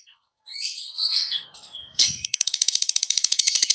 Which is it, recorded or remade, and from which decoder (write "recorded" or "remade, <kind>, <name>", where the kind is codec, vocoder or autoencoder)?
remade, codec, SNAC